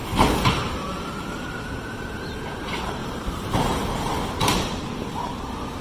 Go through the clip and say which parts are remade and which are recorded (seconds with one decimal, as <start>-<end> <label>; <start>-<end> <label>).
0.0-3.0 recorded; 3.0-5.3 remade; 5.3-5.8 recorded